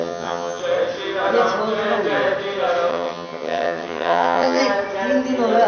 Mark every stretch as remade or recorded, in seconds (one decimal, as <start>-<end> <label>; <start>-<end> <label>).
0.0-0.6 remade; 0.6-2.9 recorded; 2.9-4.6 remade; 4.6-5.7 recorded